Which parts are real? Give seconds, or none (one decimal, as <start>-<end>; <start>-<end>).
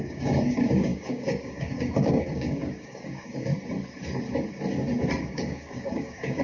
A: 3.5-5.2